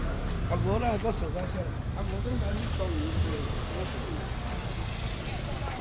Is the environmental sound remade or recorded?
recorded